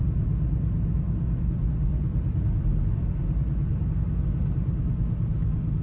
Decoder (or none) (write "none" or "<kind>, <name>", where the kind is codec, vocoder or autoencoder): none